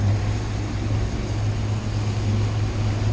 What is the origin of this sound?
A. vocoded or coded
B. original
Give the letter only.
B